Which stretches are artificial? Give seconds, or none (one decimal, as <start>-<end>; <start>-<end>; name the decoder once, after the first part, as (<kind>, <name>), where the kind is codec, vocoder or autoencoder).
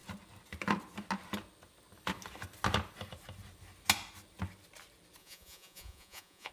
5.2-6.5 (vocoder, Vocos)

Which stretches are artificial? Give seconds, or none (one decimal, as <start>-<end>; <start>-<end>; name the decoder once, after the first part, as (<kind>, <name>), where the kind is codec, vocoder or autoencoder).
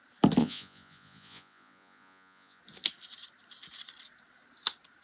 0.4-2.6 (vocoder, Vocos)